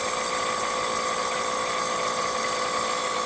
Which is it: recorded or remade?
recorded